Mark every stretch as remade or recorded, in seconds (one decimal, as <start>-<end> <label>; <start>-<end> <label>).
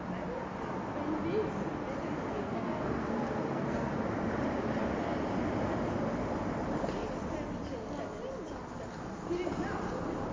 0.0-2.3 recorded; 2.3-3.9 remade; 3.9-10.3 recorded